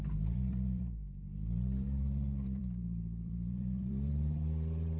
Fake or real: fake